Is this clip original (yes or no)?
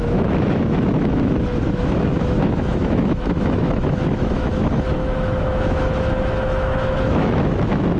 no